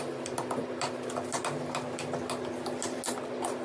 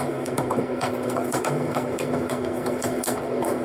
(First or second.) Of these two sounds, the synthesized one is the second